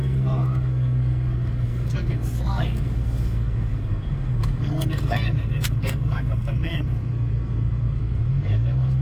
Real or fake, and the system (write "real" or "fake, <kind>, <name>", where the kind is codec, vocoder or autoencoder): fake, codec, SNAC